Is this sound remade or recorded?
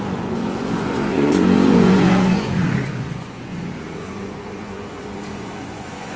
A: remade